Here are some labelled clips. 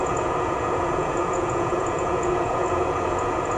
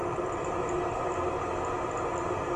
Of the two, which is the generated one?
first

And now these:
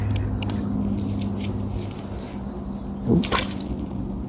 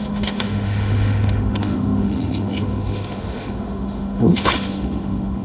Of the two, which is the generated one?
second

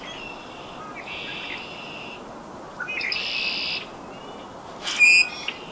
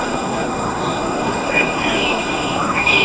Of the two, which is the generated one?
second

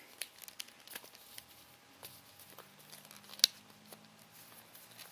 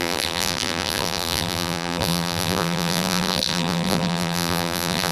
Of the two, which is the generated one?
second